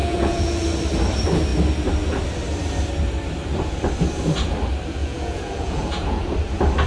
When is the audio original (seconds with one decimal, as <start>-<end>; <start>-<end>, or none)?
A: 0.6-5.0; 6.3-6.9